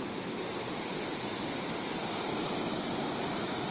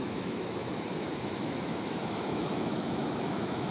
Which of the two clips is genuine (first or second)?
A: first